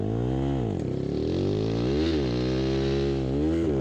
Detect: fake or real real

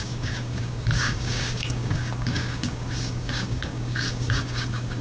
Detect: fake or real fake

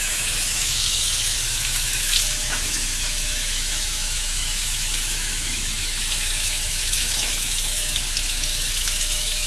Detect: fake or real fake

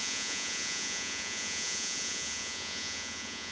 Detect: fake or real fake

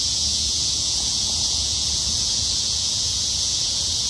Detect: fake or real fake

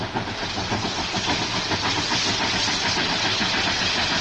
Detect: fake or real real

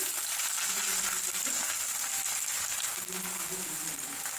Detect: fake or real real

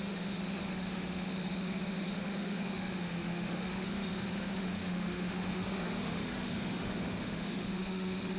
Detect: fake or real fake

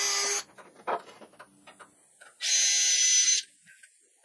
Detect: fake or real real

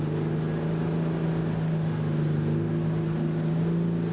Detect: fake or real real